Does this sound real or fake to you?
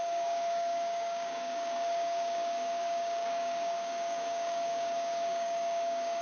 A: fake